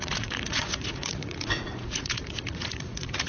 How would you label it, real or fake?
fake